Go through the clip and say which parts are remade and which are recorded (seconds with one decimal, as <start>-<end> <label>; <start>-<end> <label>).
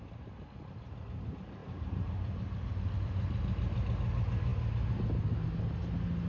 0.0-1.6 recorded; 1.6-2.8 remade; 2.8-6.3 recorded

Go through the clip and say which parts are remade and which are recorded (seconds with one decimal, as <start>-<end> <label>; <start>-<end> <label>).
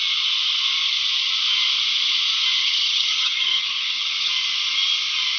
0.0-2.6 recorded; 2.6-4.3 remade; 4.3-5.4 recorded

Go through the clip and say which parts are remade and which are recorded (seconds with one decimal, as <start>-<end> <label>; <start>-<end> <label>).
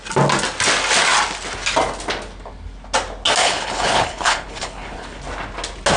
0.0-3.4 recorded; 3.4-5.2 remade; 5.2-6.0 recorded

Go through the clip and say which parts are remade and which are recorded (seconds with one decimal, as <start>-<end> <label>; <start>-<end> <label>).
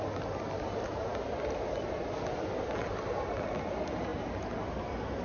0.0-5.2 recorded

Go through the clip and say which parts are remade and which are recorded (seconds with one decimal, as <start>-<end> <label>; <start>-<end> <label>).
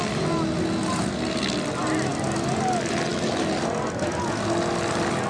0.0-5.3 recorded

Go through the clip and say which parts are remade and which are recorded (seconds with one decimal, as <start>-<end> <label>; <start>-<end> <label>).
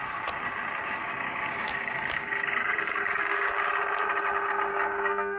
0.0-1.0 recorded; 1.0-3.7 remade; 3.7-4.7 recorded; 4.7-5.4 remade